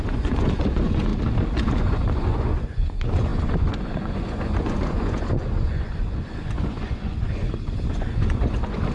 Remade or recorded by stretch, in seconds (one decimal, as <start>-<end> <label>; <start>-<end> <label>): 0.0-1.1 remade; 1.1-1.8 recorded; 1.8-8.9 remade